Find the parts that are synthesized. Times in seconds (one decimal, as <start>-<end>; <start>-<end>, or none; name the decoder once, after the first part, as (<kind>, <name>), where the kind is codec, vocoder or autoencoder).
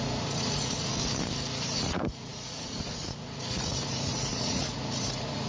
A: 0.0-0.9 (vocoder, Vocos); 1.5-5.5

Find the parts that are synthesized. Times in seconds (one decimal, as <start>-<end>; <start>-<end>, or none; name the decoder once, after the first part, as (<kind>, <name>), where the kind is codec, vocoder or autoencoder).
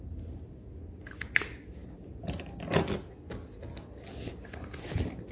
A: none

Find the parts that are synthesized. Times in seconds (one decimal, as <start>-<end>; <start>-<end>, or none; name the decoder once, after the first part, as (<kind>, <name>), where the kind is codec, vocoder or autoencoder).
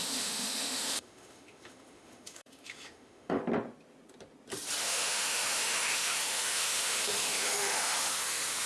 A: 0.0-3.4 (autoencoder, DAC-VAE); 4.8-8.7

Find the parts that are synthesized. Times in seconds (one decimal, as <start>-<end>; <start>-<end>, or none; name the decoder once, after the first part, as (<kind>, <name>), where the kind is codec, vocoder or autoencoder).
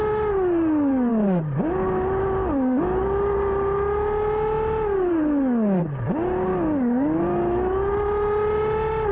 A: none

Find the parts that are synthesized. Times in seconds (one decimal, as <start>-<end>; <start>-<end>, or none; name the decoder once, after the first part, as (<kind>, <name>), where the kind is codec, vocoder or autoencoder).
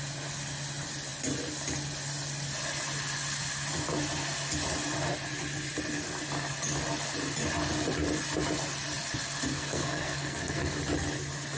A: 9.5-10.8 (codec, SNAC)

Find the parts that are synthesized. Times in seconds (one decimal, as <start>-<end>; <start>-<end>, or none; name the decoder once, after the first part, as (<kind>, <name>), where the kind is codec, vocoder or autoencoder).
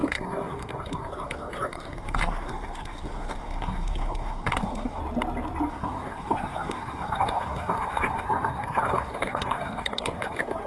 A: 0.0-5.0 (codec, SNAC); 5.7-10.7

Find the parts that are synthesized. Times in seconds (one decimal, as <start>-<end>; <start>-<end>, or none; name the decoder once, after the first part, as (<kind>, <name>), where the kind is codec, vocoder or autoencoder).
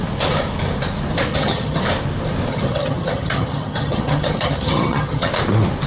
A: 1.3-1.8 (vocoder, HiFi-GAN); 2.5-5.3